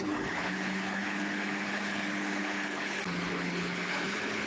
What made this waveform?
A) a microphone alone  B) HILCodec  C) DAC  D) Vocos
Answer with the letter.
B